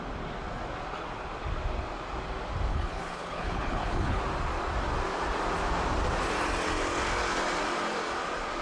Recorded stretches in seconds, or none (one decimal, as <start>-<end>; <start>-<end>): 0.0-2.7; 4.2-8.6